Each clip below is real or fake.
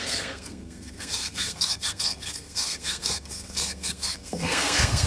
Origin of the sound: fake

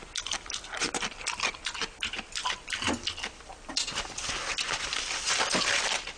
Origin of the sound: real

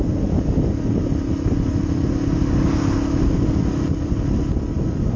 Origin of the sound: real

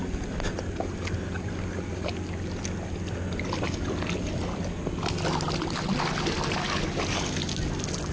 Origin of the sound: real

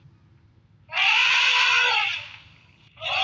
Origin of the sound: real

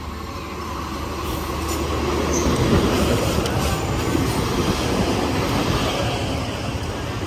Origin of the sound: real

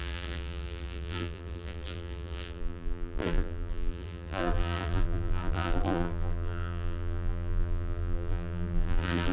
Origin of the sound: fake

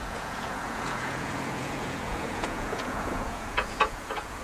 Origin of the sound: fake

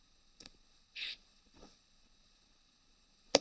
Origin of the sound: fake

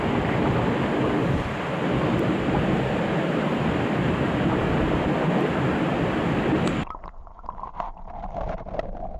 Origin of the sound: real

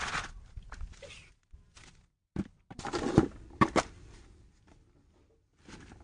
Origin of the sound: real